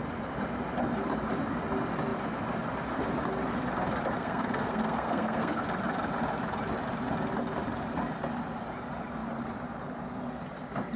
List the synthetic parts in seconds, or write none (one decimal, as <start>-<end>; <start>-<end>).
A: 4.2-5.6